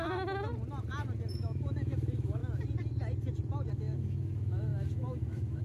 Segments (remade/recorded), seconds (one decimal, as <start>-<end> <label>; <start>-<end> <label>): 0.0-0.5 remade; 0.5-1.3 recorded; 1.3-2.4 remade; 2.4-3.7 recorded; 3.7-5.6 remade